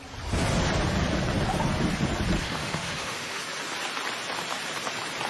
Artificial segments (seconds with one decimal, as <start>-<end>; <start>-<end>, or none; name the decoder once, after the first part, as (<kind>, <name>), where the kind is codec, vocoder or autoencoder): 2.4-3.4 (autoencoder, DAC-VAE)